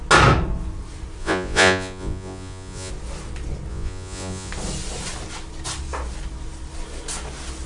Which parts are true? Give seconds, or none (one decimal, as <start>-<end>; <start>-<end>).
0.0-1.2; 2.9-3.7; 4.5-7.7